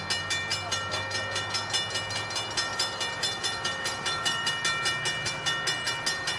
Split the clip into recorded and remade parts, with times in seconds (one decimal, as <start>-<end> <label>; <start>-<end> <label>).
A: 0.0-0.5 recorded; 0.5-1.4 remade; 1.4-2.7 recorded; 2.7-4.5 remade; 4.5-6.4 recorded

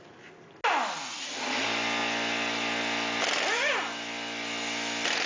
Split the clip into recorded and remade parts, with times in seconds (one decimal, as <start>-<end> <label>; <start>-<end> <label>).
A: 0.0-5.3 recorded

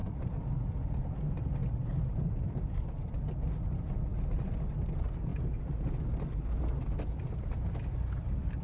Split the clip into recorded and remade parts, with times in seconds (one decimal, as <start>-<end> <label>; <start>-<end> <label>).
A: 0.0-0.6 remade; 0.6-1.6 recorded; 1.6-2.9 remade; 2.9-8.6 recorded

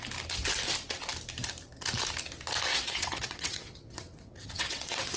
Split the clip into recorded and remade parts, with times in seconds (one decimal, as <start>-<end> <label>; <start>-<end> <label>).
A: 0.0-2.7 recorded; 2.7-5.2 remade

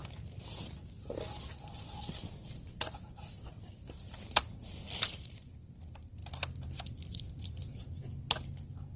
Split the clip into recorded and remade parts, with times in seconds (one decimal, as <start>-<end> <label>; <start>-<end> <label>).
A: 0.0-5.3 remade; 5.3-6.2 recorded; 6.2-7.4 remade; 7.4-9.0 recorded